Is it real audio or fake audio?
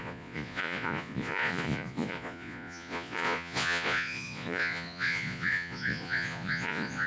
fake